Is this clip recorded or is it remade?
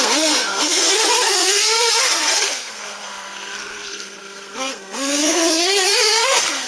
remade